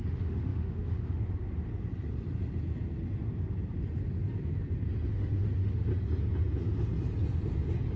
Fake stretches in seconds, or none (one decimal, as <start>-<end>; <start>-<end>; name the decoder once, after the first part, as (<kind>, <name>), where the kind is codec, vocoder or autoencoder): 0.0-1.7 (autoencoder, DAC-VAE); 5.1-5.9